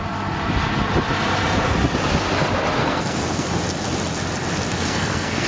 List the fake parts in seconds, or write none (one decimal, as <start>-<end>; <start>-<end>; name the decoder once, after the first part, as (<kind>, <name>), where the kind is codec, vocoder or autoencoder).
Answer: 2.8-3.5 (codec, SNAC); 4.7-5.5